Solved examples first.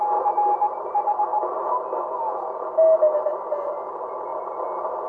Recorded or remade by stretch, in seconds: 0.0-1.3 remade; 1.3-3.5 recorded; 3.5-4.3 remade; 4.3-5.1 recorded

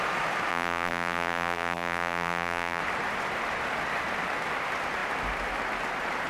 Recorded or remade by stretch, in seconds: 0.0-0.5 recorded; 0.5-2.8 remade; 2.8-6.3 recorded